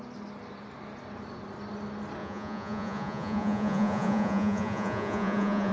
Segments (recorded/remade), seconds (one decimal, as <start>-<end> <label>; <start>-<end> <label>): 0.0-2.2 recorded; 2.2-5.7 remade